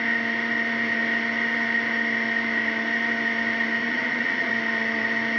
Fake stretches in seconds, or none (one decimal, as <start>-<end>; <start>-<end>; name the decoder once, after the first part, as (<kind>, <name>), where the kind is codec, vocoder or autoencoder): 3.8-4.5 (vocoder, Vocos)